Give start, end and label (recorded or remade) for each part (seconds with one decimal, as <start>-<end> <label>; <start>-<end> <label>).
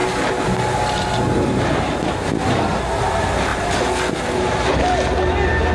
0.0-5.7 recorded